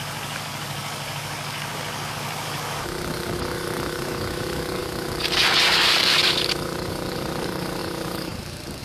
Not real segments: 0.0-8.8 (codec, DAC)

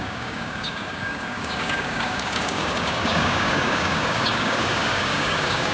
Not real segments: 0.0-5.7 (codec, DAC)